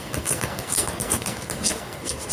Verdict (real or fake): fake